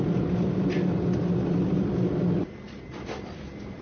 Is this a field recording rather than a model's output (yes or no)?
no